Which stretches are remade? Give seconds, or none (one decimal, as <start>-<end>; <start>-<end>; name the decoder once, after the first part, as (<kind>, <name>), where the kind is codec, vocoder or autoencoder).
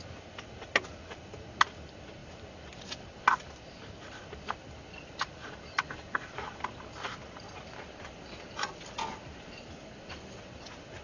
none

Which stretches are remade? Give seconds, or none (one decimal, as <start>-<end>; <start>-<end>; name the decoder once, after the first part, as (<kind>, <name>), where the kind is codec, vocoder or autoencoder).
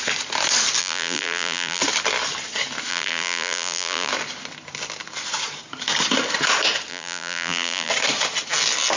0.8-1.8 (vocoder, BigVGAN v2); 2.9-4.1; 6.9-7.9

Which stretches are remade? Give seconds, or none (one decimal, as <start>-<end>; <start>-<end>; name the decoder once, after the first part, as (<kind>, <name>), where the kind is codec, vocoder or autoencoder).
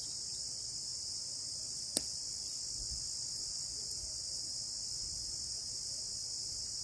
none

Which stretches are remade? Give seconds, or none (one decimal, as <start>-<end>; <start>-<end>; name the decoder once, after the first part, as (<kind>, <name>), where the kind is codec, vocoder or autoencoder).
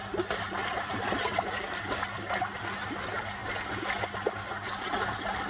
none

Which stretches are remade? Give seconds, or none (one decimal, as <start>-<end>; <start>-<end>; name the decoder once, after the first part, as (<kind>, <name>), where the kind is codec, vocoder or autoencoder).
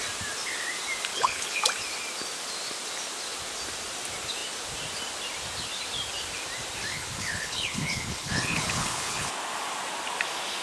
1.1-1.6 (codec, HILCodec); 6.9-9.3